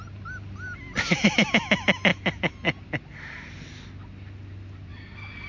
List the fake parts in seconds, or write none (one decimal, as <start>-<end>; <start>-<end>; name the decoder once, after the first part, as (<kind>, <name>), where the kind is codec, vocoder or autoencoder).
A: none